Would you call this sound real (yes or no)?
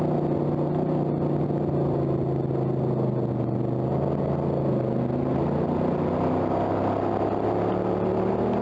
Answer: yes